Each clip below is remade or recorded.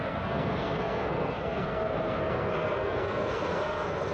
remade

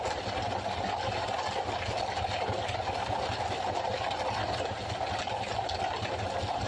recorded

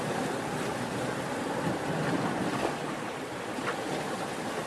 recorded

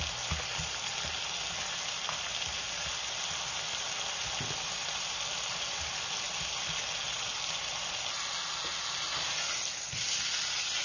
recorded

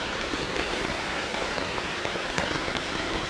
remade